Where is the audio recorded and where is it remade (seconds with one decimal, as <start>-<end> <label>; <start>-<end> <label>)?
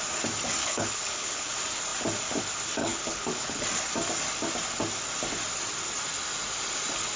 0.0-0.6 recorded; 0.6-1.5 remade; 1.5-2.8 recorded; 2.8-3.6 remade; 3.6-7.2 recorded